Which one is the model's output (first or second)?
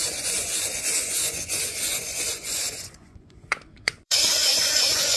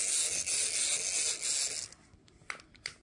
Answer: first